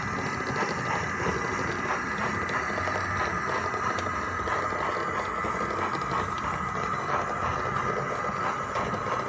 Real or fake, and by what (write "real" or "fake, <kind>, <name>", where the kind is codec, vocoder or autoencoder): real